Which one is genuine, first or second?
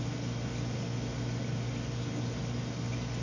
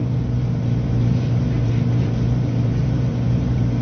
first